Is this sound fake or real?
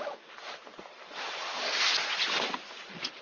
real